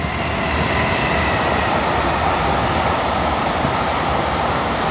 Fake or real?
real